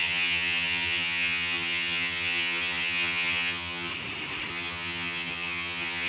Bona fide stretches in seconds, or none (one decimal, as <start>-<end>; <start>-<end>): 3.9-4.5